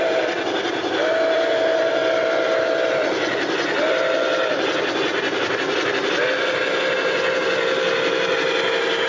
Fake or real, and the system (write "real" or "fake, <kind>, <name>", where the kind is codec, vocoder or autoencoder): real